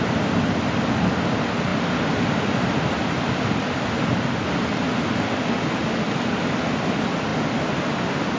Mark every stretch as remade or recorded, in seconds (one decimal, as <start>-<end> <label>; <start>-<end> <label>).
0.0-8.4 recorded